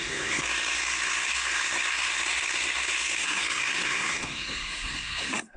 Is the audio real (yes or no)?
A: no